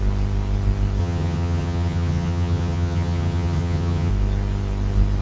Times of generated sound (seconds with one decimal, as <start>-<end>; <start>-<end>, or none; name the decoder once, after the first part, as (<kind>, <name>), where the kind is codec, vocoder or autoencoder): 1.0-4.1 (vocoder, HiFi-GAN)